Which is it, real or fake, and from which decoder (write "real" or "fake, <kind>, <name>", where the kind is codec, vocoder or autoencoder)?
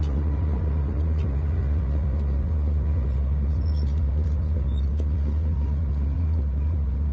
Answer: fake, vocoder, Vocos